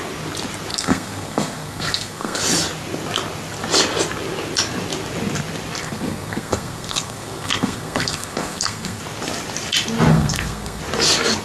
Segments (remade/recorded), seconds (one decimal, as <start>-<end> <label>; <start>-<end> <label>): 0.0-0.7 recorded; 0.7-2.4 remade; 2.4-5.8 recorded; 5.8-9.0 remade; 9.0-10.1 recorded; 10.1-10.8 remade; 10.8-11.4 recorded